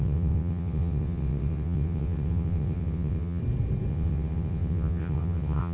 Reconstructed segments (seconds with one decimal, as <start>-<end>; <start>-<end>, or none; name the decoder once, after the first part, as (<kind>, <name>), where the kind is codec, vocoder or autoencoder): 0.0-3.4 (vocoder, WaveNeXt); 3.9-5.7